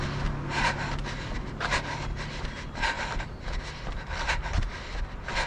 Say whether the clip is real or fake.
real